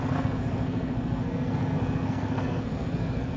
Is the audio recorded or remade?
remade